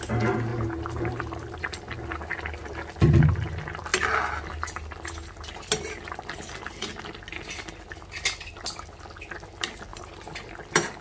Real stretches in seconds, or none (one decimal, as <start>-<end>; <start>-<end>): 0.0-0.5; 1.8-9.9; 10.5-11.0